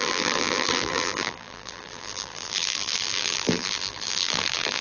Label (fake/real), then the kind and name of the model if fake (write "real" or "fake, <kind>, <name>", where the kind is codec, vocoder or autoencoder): fake, vocoder, BigVGAN v2